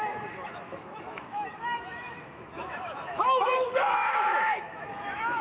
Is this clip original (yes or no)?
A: no